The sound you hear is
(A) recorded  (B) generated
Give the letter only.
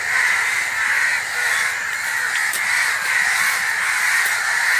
A